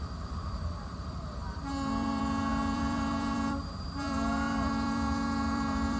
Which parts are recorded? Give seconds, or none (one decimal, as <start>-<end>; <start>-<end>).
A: none